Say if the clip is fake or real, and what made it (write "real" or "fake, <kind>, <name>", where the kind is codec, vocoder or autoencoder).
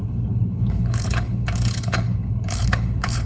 fake, codec, HILCodec